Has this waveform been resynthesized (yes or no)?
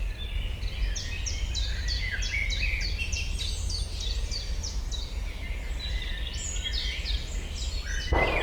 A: no